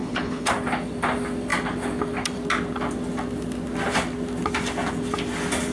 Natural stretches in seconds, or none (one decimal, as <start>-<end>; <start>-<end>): 0.5-5.7